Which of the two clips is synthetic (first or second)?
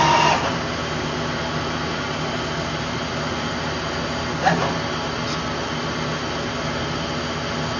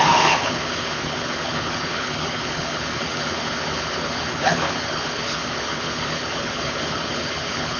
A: second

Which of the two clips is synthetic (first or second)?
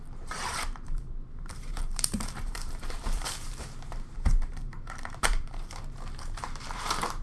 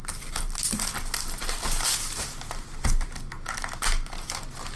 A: first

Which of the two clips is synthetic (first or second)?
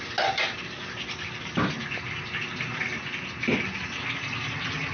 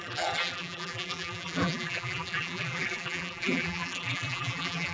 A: second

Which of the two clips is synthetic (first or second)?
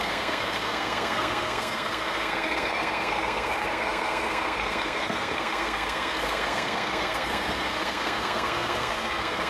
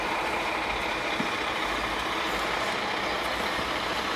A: first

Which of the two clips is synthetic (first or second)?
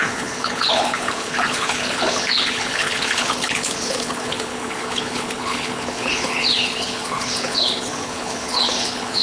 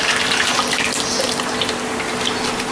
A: first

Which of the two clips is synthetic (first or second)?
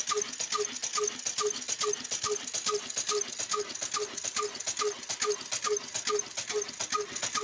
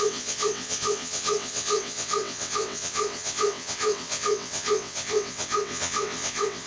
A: second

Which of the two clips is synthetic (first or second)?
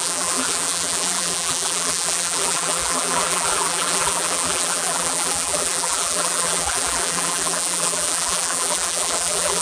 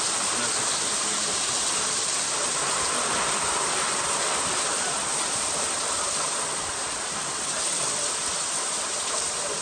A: first